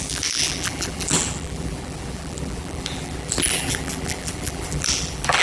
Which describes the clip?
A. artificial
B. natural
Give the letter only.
A